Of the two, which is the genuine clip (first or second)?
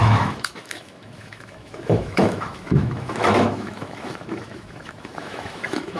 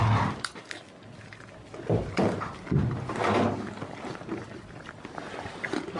second